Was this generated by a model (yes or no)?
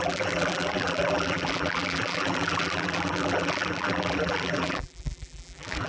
yes